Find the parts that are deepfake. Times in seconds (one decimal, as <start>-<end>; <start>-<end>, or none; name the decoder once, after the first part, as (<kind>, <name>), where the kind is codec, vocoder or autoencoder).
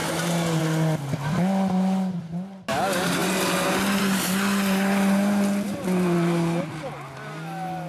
none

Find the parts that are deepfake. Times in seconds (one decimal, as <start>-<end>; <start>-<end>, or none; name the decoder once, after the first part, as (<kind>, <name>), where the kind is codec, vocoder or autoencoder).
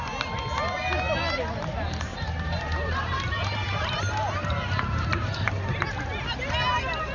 2.1-6.2 (vocoder, BigVGAN v2)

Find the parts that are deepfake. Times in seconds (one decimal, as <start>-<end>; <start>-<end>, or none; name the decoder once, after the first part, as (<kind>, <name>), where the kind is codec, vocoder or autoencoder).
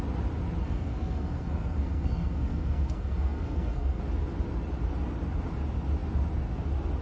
0.6-4.0 (codec, SNAC)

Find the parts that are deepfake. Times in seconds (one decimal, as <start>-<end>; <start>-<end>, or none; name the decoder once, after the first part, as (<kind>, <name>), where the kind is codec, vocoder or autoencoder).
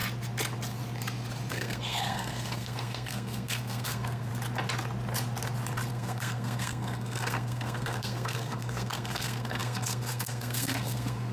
1.5-4.3 (codec, SNAC); 5.9-11.3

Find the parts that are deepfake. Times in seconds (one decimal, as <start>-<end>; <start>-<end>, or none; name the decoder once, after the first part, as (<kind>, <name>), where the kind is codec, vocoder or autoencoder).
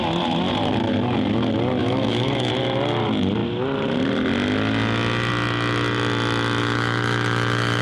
1.8-2.5 (autoencoder, DAC-VAE); 6.6-7.8